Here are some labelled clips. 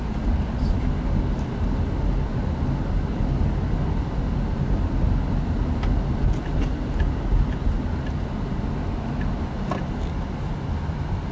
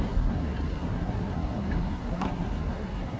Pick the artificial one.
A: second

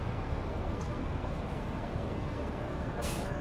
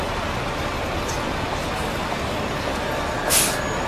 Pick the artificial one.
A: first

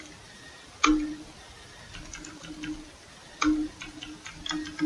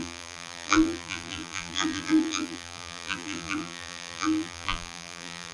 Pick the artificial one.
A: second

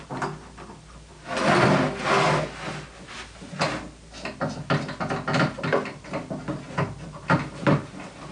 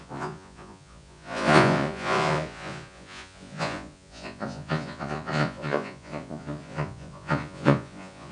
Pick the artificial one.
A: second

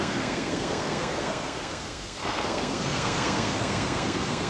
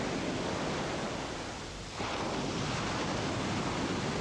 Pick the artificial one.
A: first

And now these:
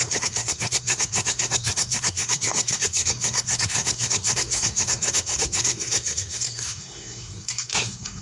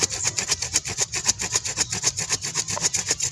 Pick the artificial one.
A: first